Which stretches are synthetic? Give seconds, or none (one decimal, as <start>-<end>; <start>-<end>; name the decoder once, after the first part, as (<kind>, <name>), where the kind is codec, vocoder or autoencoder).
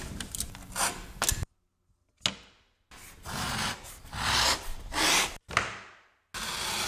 none